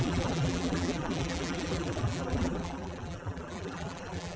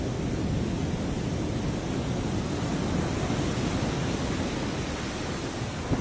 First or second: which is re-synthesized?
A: first